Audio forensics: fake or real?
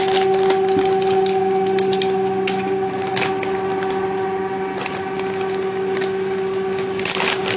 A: real